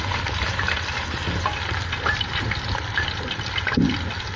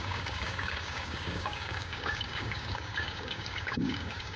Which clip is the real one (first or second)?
first